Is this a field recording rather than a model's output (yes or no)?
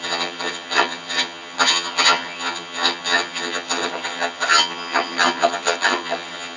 no